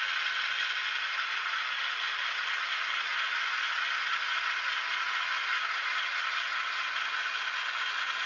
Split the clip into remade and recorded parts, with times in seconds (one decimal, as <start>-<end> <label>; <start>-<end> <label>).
0.0-8.3 recorded

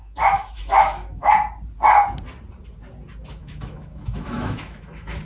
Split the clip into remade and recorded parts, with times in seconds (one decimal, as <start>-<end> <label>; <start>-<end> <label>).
0.0-1.3 remade; 1.3-3.4 recorded; 3.4-5.2 remade

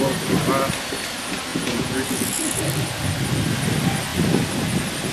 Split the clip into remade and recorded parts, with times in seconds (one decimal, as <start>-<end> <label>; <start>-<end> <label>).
0.0-1.5 recorded; 1.5-2.6 remade; 2.6-5.1 recorded

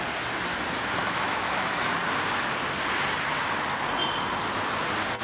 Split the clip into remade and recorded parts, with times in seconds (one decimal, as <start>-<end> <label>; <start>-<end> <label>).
0.0-1.0 recorded; 1.0-1.8 remade; 1.8-5.2 recorded

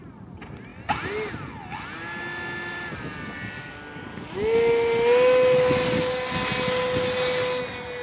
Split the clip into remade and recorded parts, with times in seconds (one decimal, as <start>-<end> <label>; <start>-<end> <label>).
0.0-8.0 recorded